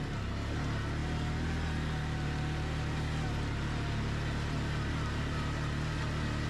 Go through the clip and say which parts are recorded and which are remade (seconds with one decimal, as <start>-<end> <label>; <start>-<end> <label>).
0.0-6.5 recorded